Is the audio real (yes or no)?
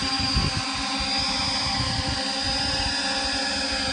yes